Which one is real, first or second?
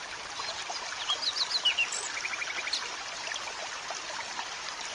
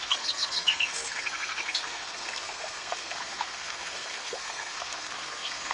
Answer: first